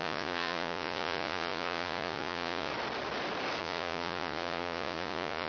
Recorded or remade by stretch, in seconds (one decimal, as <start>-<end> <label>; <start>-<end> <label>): 0.0-2.7 remade; 2.7-3.6 recorded; 3.6-5.5 remade